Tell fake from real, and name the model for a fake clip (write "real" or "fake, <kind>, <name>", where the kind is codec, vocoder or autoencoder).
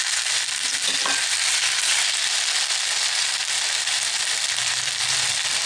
real